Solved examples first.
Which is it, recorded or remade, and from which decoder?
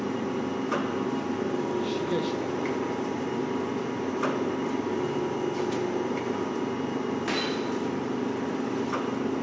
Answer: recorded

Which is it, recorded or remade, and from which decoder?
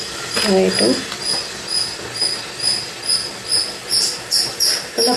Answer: recorded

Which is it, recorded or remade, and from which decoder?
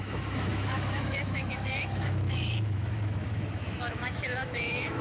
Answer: remade, autoencoder, DAC-VAE